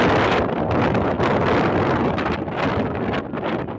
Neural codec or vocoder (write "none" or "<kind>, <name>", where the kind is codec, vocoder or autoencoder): none